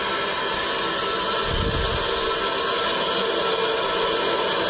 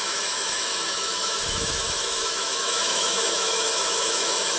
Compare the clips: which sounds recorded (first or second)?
first